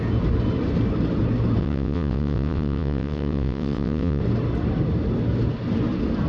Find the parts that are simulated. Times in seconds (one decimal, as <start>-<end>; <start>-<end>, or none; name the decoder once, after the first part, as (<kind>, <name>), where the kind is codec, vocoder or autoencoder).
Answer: 1.6-4.2 (vocoder, WaveNeXt)